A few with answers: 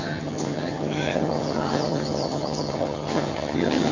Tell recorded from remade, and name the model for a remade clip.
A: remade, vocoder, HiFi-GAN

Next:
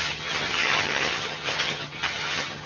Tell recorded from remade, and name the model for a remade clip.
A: remade, vocoder, HiFi-GAN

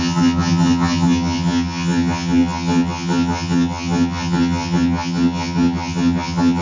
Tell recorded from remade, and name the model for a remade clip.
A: remade, vocoder, HiFi-GAN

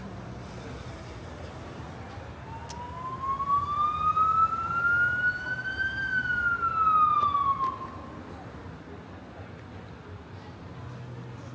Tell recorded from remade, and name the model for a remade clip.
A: recorded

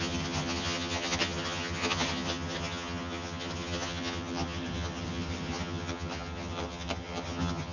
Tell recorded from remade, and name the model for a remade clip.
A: remade, vocoder, HiFi-GAN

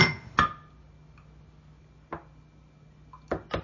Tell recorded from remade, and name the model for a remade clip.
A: recorded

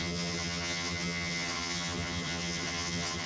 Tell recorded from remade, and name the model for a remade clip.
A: remade, vocoder, HiFi-GAN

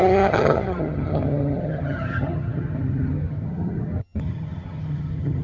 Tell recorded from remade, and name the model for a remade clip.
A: remade, vocoder, HiFi-GAN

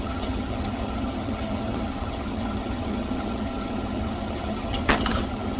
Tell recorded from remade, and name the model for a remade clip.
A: remade, vocoder, HiFi-GAN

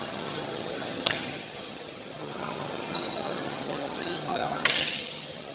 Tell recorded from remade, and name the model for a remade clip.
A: remade, vocoder, HiFi-GAN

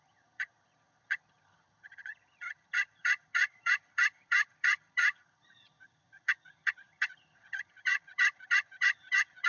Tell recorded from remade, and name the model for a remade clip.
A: remade, vocoder, HiFi-GAN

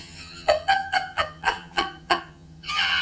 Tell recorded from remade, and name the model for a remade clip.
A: remade, vocoder, HiFi-GAN